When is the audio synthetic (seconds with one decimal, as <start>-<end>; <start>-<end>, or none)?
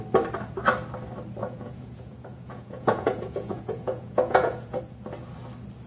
1.4-4.8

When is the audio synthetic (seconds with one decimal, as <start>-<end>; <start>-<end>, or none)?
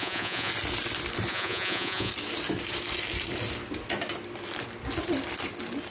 0.0-0.5; 1.3-2.1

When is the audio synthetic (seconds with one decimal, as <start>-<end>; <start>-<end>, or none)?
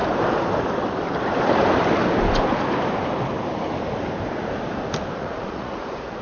5.2-6.2